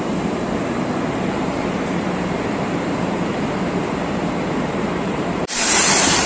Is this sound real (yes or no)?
no